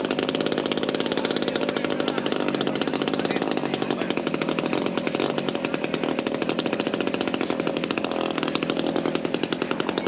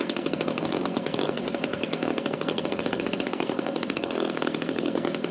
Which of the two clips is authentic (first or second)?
first